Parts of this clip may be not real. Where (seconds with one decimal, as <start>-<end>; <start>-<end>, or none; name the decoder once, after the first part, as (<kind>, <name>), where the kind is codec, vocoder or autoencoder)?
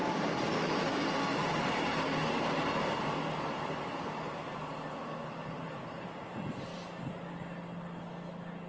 1.4-5.5 (vocoder, BigVGAN v2)